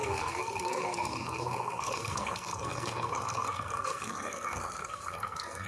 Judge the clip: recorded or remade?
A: remade